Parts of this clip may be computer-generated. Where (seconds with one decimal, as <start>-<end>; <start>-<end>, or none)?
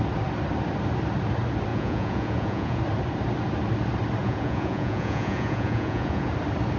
1.7-2.8; 4.2-6.3